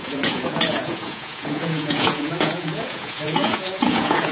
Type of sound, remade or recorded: remade